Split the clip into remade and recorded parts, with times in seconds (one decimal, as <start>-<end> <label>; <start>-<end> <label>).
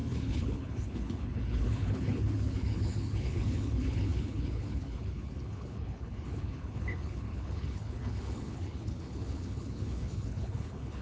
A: 0.0-11.0 remade